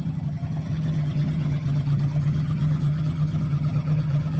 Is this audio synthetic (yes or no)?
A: yes